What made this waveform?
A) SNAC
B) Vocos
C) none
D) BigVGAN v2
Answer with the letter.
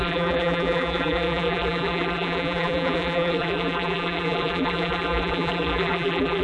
D